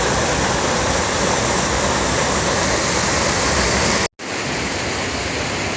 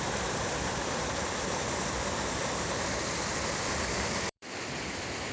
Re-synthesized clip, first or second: second